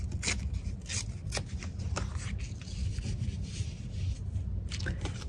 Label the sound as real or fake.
real